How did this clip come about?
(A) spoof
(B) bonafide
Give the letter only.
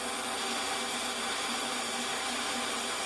B